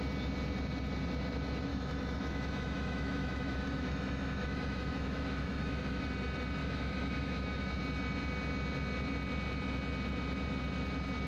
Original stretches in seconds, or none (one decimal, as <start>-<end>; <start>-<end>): 0.0-1.7; 6.0-6.6; 7.8-11.3